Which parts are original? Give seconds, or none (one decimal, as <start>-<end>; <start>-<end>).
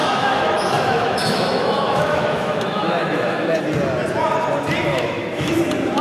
3.6-4.9; 5.6-6.0